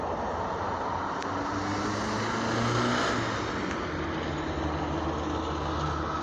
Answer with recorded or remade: recorded